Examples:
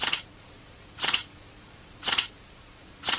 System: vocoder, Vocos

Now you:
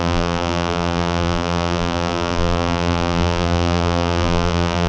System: vocoder, BigVGAN v2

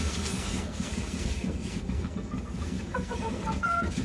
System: codec, SNAC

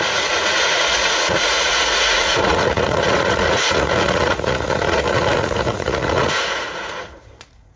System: vocoder, Vocos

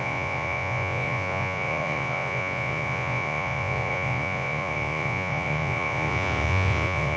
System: vocoder, Vocos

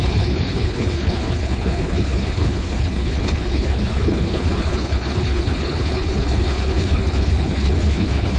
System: codec, HILCodec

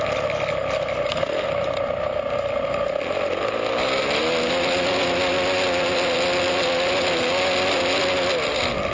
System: none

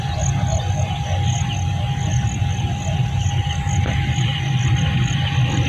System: none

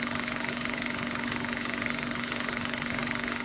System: codec, HILCodec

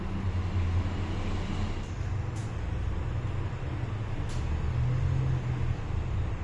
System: none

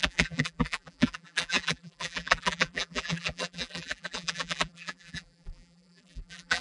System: vocoder, BigVGAN v2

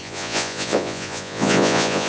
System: vocoder, Vocos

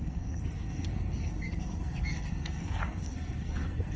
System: codec, SNAC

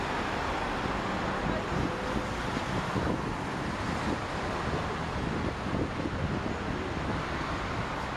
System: none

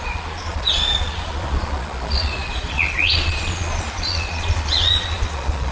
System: vocoder, Vocos